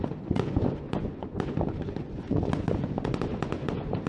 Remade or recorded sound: remade